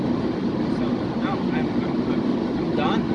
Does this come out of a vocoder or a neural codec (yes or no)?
no